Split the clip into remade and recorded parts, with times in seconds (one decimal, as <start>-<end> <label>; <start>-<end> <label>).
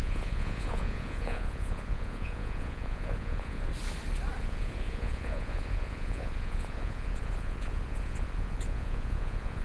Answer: 0.0-3.7 remade; 3.7-4.4 recorded; 4.4-9.6 remade